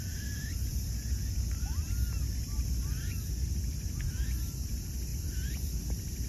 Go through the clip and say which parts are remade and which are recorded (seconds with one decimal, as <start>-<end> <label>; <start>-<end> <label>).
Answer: 0.0-5.1 recorded; 5.1-6.3 remade